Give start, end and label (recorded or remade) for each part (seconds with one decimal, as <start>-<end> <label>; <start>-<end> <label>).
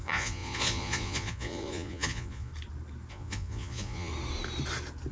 0.0-2.5 remade; 2.5-3.1 recorded; 3.1-4.1 remade; 4.1-5.1 recorded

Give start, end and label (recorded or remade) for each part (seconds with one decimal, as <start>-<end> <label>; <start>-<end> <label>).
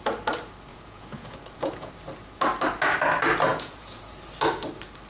0.0-0.7 recorded; 0.7-1.9 remade; 1.9-3.5 recorded; 3.5-4.1 remade; 4.1-5.1 recorded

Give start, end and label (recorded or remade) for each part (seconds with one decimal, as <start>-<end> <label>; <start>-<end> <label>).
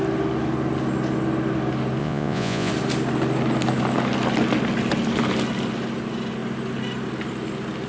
0.0-2.0 recorded; 2.0-2.7 remade; 2.7-7.9 recorded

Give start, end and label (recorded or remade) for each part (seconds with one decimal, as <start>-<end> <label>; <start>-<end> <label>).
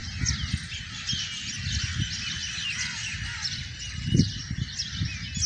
0.0-5.5 recorded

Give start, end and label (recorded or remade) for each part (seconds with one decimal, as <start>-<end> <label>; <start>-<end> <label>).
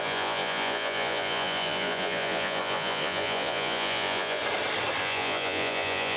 0.0-4.4 remade; 4.4-5.0 recorded; 5.0-6.2 remade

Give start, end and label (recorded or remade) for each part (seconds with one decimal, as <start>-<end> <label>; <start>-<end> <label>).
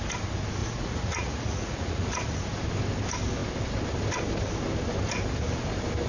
0.0-0.6 recorded; 0.6-2.3 remade; 2.3-6.1 recorded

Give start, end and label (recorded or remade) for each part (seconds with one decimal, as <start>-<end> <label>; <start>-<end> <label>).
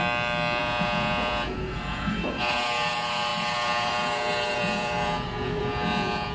0.0-0.6 recorded; 0.6-6.3 remade